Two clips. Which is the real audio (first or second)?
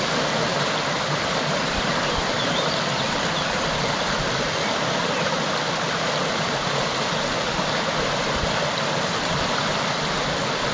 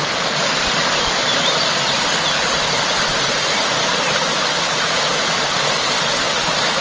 second